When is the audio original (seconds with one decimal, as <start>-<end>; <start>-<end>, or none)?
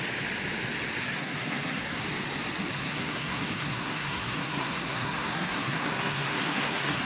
0.0-1.0; 2.0-2.7